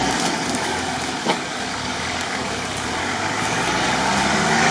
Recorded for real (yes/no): no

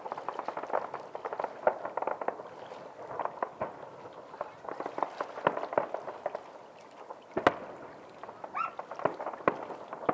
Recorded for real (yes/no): yes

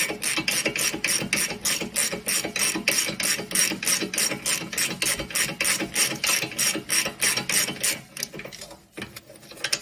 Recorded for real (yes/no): yes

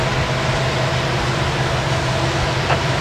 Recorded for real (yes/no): yes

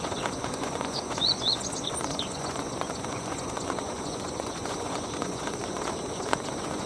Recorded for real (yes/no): no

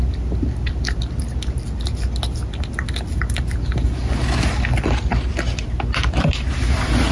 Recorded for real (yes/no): yes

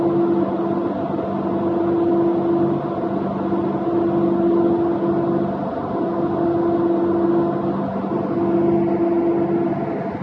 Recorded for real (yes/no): yes